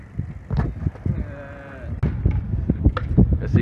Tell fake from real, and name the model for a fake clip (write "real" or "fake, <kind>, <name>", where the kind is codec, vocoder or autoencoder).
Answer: real